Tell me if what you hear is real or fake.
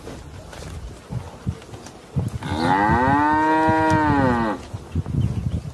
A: real